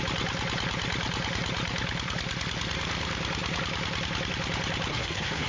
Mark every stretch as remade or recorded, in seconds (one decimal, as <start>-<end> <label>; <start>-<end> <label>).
0.0-4.9 recorded; 4.9-5.5 remade